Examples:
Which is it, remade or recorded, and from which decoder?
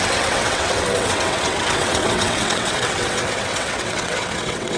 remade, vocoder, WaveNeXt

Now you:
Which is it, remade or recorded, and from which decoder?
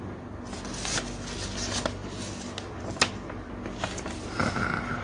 recorded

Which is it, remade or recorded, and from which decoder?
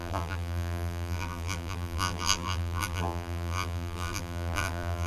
remade, vocoder, BigVGAN v2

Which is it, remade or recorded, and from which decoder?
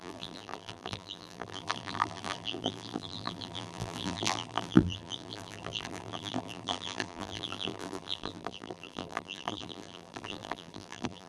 remade, vocoder, BigVGAN v2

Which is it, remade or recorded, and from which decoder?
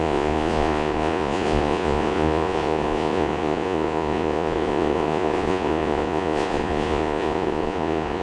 remade, vocoder, Vocos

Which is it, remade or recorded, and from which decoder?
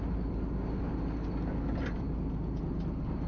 recorded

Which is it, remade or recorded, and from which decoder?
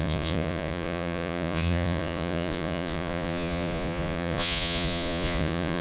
remade, vocoder, Vocos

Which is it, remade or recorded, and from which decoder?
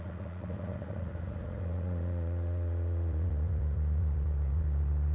remade, vocoder, Vocos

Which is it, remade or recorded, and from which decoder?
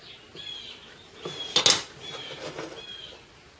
recorded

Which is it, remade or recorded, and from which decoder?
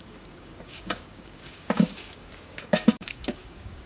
remade, codec, DAC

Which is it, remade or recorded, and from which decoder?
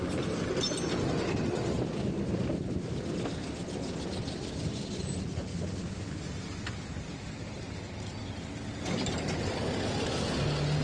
recorded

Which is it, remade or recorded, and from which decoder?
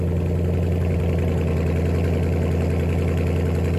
recorded